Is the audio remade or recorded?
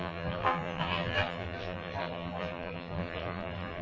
remade